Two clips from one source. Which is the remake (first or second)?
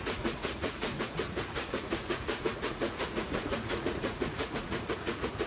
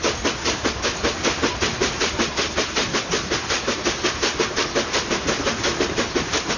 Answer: first